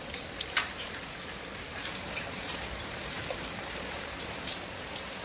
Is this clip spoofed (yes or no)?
yes